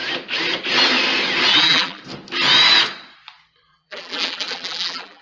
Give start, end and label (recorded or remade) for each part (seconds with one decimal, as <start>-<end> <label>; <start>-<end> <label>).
0.0-1.5 recorded; 1.5-2.0 remade; 2.0-3.7 recorded; 3.7-5.2 remade